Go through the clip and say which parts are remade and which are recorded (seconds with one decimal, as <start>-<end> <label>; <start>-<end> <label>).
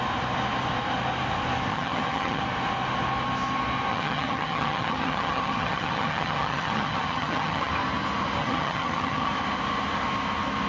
0.0-1.7 recorded; 1.7-2.4 remade; 2.4-3.9 recorded; 3.9-7.7 remade; 7.7-8.4 recorded; 8.4-9.3 remade; 9.3-10.7 recorded